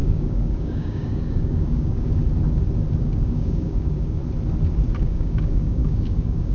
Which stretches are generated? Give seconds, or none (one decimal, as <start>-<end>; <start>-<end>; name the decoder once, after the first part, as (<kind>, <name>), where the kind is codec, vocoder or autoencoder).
0.0-2.2 (codec, DAC); 3.0-4.2; 5.0-6.5